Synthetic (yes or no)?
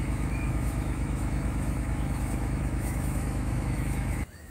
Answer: yes